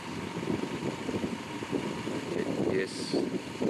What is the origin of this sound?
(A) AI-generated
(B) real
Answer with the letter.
B